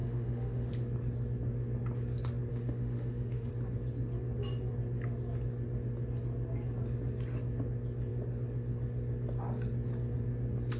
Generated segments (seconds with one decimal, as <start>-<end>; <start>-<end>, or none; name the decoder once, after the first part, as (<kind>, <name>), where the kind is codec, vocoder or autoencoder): 0.0-0.7 (autoencoder, DAC-VAE); 2.5-3.5